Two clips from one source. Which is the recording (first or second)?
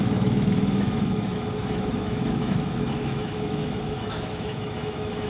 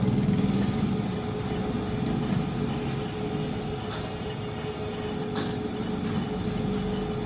second